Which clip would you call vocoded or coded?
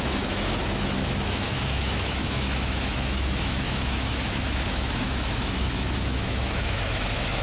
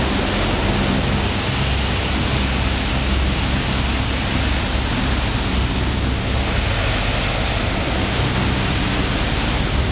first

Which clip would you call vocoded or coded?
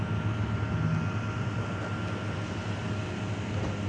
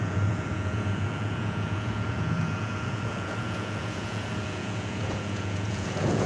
second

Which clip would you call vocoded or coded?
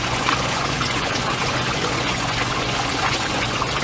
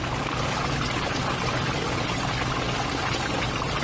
first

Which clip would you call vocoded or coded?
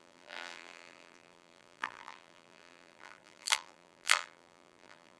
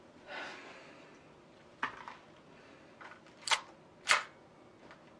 first